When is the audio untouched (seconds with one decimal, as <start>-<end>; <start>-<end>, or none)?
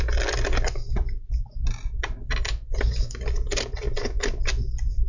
0.0-5.1